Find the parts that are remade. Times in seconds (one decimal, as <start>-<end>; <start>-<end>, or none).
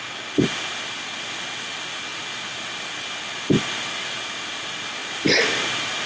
none